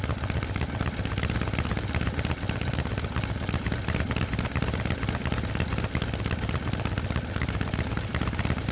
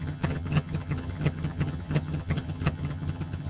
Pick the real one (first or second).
first